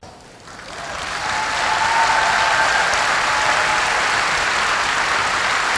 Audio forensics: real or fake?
real